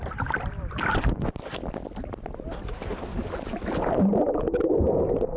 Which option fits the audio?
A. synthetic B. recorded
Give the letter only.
B